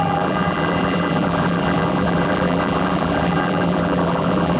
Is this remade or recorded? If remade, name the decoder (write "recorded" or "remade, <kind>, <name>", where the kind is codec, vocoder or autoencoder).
remade, vocoder, BigVGAN v2